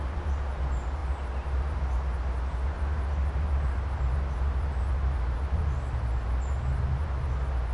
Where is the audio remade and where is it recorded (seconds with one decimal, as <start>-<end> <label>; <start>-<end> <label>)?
0.0-7.7 recorded